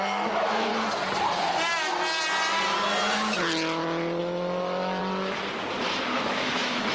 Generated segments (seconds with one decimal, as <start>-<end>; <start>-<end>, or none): 0.0-0.7; 4.2-5.0; 6.2-6.9